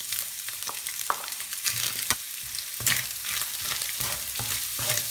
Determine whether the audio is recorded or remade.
remade